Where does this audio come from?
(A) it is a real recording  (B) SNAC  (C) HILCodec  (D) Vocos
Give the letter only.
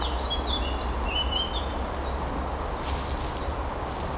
A